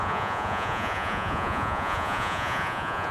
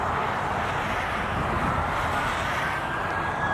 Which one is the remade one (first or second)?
first